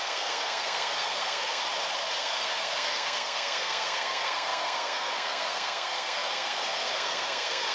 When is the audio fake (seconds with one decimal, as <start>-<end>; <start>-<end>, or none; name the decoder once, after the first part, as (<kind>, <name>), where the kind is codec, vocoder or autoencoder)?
0.0-1.6 (codec, SNAC); 2.2-7.7